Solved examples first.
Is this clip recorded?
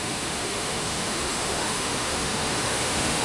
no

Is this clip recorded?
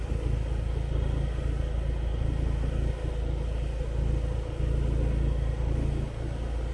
yes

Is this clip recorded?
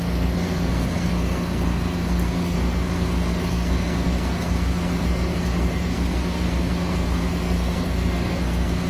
no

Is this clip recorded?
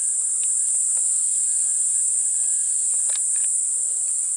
yes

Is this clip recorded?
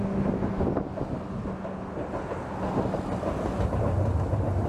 yes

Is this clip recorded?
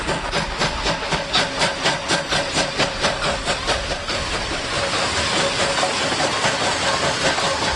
yes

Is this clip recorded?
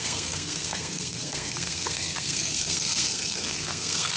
no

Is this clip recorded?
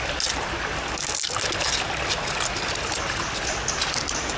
yes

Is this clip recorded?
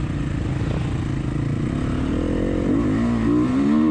yes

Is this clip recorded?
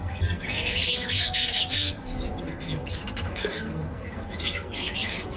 no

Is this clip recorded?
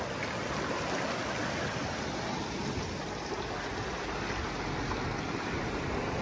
yes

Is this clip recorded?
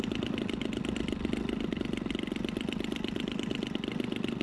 yes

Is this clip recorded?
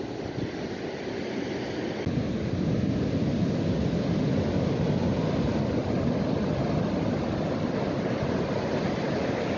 yes